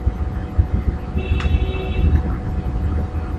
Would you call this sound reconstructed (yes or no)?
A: no